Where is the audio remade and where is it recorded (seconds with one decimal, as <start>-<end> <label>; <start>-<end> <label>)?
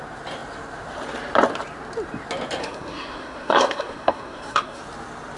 0.0-2.6 recorded; 2.6-4.8 remade; 4.8-5.4 recorded